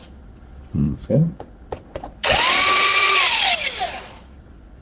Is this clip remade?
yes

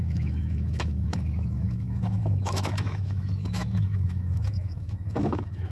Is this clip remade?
yes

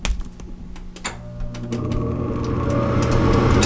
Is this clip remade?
no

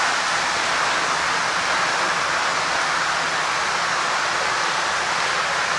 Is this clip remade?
no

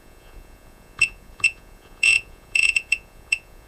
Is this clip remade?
yes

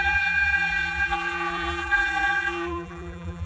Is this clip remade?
yes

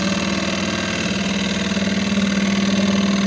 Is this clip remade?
no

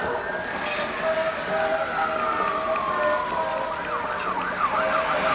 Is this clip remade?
no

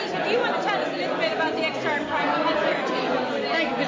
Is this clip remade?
no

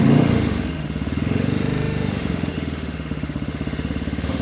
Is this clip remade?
yes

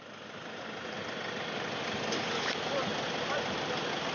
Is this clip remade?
no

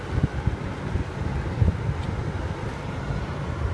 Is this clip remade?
no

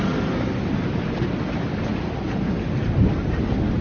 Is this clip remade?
no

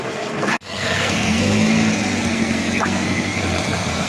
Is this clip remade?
yes